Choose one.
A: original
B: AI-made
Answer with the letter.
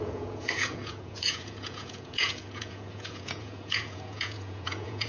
B